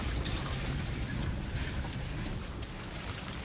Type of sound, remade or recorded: remade